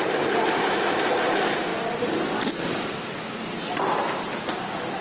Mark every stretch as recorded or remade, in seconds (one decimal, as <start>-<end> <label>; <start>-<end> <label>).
0.0-5.0 recorded